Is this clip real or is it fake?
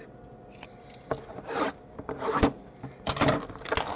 real